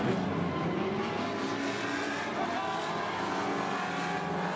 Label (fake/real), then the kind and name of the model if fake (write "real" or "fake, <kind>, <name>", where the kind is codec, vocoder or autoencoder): real